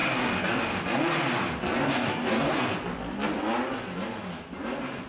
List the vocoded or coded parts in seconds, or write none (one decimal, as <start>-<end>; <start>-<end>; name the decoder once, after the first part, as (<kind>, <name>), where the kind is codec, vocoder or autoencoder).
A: 0.0-0.8 (codec, DAC); 1.9-2.5